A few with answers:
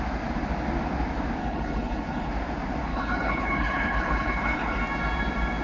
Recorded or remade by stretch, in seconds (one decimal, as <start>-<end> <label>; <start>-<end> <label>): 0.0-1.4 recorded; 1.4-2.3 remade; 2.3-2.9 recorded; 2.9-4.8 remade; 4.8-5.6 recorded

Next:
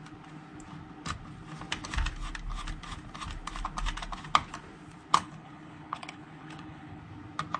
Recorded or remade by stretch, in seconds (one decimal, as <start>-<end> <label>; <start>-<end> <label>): 0.0-5.1 recorded; 5.1-7.0 remade; 7.0-7.6 recorded

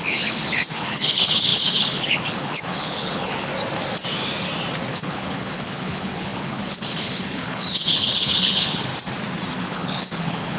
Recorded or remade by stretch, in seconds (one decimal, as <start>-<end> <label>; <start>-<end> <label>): 0.0-3.5 remade; 3.5-4.9 recorded; 4.9-8.9 remade; 8.9-9.6 recorded; 9.6-10.6 remade

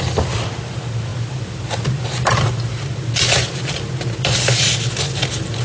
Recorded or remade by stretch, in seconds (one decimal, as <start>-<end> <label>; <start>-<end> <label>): 0.0-5.6 recorded